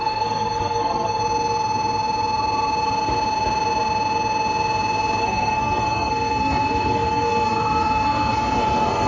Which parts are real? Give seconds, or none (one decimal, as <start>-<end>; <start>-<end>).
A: 1.2-5.2

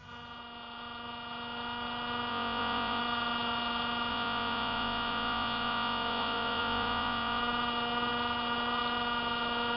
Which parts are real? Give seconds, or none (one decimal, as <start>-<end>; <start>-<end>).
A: 0.0-2.3; 3.0-4.1; 7.4-9.8

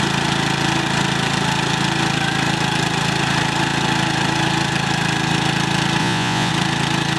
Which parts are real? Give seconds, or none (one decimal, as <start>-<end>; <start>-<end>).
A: 0.0-6.0; 6.5-7.2

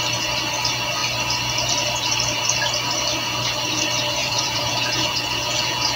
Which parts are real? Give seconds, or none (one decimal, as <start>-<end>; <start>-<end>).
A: 0.0-4.2